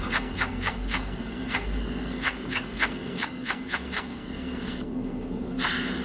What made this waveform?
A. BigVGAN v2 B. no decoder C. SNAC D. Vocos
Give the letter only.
C